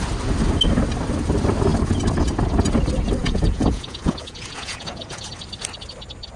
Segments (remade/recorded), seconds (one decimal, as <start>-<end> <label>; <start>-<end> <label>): 0.0-3.2 recorded; 3.2-5.3 remade; 5.3-6.4 recorded